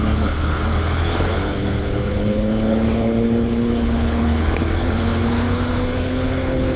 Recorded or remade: remade